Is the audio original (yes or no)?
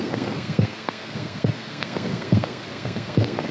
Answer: no